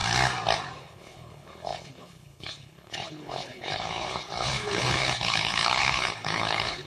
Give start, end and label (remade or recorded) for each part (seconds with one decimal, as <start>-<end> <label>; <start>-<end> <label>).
0.0-0.8 recorded; 0.8-6.9 remade